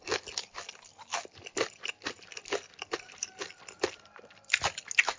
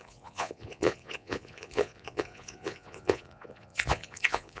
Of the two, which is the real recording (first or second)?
first